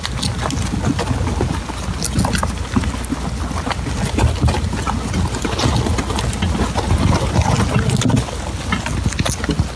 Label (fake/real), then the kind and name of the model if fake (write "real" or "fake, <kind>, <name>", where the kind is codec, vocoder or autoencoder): real